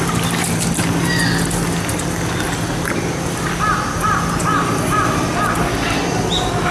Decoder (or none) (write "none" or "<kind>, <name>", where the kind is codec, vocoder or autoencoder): none